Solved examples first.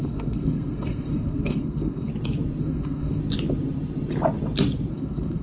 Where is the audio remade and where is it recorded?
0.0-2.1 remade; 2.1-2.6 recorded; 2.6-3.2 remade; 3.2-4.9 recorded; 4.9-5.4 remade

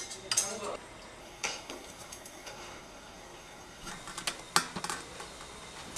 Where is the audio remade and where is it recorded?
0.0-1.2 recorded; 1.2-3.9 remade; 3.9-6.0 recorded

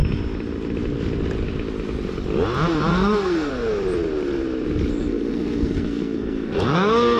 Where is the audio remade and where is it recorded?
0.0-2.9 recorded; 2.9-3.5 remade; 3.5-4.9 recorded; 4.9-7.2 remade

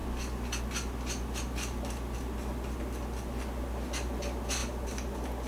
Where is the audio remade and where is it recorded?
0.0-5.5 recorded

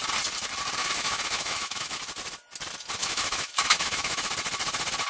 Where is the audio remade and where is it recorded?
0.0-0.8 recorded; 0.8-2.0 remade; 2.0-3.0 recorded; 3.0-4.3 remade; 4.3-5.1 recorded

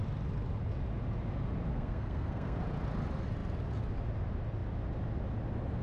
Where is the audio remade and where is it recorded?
0.0-1.7 recorded; 1.7-2.6 remade; 2.6-5.8 recorded

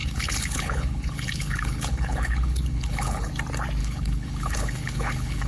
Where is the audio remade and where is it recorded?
0.0-3.3 remade; 3.3-3.8 recorded; 3.8-5.5 remade

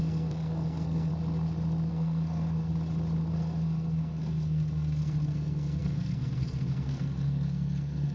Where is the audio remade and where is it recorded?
0.0-1.1 remade; 1.1-1.9 recorded; 1.9-2.7 remade; 2.7-3.3 recorded; 3.3-8.1 remade